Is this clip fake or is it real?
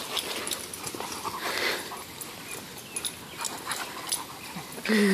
real